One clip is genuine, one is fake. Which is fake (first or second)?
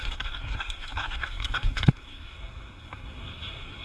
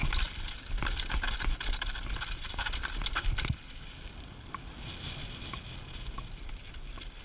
first